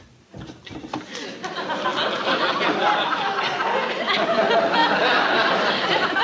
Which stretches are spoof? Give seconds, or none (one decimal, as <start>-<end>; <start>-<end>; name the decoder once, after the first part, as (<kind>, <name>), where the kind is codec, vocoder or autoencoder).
none